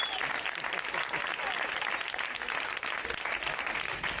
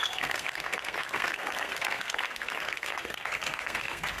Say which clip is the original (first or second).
first